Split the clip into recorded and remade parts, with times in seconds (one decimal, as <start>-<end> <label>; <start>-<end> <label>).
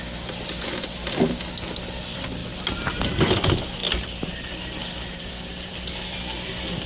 0.0-2.4 recorded; 2.4-2.9 remade; 2.9-3.8 recorded; 3.8-5.2 remade; 5.2-6.9 recorded